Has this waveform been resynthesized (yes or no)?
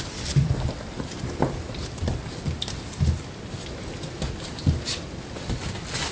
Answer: no